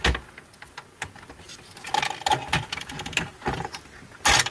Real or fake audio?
real